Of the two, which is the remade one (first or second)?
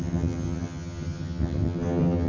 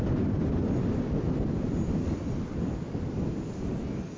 first